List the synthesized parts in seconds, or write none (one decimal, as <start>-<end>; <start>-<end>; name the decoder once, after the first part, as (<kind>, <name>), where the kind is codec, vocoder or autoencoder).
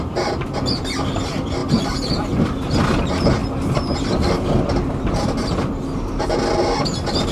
1.6-2.4 (vocoder, BigVGAN v2)